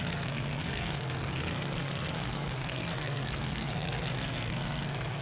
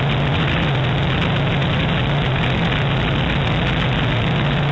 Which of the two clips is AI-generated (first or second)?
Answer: first